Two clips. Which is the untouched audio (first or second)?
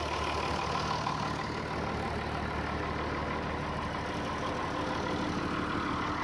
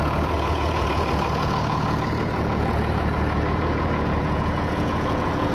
first